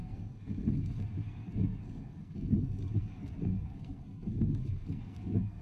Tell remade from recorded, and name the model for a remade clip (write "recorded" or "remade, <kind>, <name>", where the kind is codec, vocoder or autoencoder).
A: remade, codec, SNAC